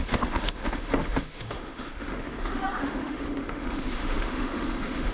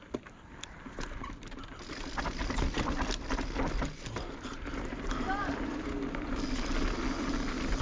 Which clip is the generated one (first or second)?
first